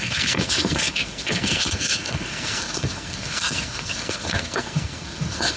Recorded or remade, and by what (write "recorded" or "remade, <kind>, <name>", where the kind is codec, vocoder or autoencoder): remade, codec, SNAC